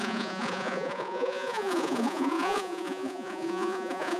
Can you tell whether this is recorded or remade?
remade